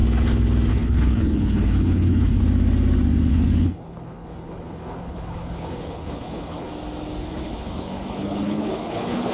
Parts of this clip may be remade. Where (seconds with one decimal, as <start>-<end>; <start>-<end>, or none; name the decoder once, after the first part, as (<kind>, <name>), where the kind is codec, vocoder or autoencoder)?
0.7-2.4 (codec, HILCodec); 3.3-6.7; 7.2-9.3